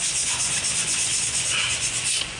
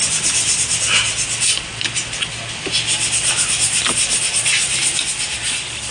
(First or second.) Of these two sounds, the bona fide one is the second